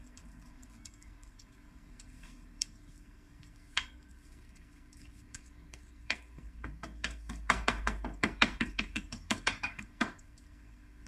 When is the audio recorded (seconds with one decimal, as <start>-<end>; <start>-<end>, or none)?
none